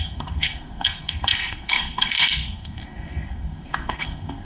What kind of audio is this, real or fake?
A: fake